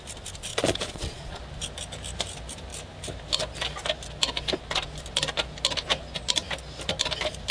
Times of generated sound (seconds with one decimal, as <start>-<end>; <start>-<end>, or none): 0.5-1.4